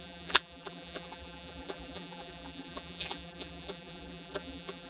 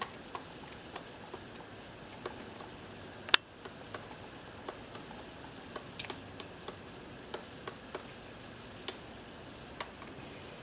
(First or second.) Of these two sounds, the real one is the second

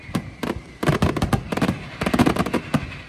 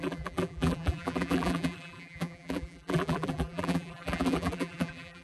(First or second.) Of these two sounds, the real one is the first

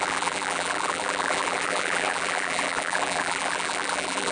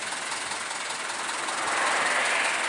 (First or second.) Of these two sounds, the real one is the second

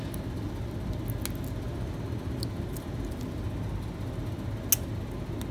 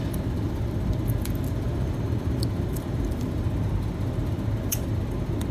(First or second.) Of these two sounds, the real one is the first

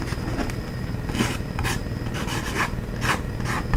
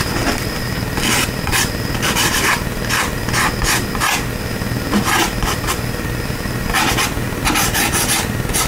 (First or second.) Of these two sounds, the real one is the first